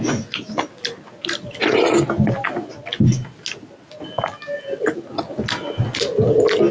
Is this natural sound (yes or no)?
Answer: yes